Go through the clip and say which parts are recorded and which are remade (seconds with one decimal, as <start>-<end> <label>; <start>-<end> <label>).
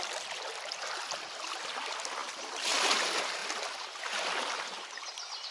0.0-5.5 recorded